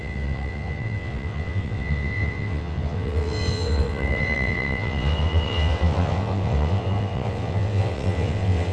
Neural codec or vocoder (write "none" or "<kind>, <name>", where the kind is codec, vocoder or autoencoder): vocoder, WaveNeXt